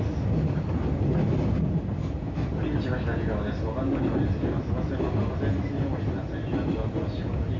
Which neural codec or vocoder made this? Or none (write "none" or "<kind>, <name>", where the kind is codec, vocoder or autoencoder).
none